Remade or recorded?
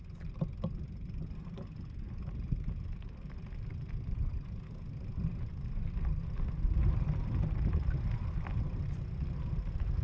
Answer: remade